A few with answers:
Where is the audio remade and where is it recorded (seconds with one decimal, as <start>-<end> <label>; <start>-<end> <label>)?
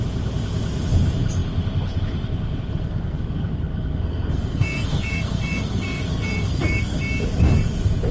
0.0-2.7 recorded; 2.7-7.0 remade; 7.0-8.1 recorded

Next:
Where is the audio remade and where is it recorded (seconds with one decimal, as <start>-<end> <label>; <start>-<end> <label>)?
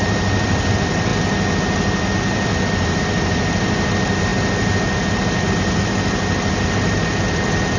0.0-7.8 recorded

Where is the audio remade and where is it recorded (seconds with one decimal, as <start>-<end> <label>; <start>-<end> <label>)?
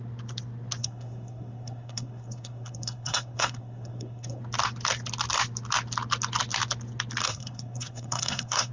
0.0-0.8 recorded; 0.8-4.4 remade; 4.4-7.2 recorded; 7.2-8.7 remade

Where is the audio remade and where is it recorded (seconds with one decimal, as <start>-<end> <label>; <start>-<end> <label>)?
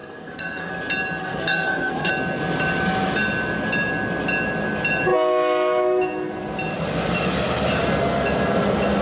0.0-0.7 remade; 0.7-1.2 recorded; 1.2-2.1 remade; 2.1-9.0 recorded